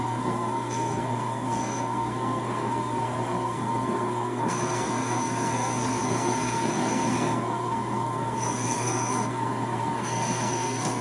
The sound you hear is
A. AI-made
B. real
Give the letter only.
A